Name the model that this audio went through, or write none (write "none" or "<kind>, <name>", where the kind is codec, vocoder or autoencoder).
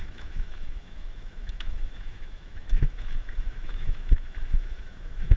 autoencoder, DAC-VAE